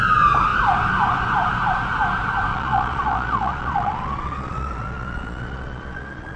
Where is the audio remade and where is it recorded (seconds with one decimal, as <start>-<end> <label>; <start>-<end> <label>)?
0.0-2.5 recorded; 2.5-6.4 remade